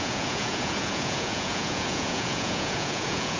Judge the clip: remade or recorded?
remade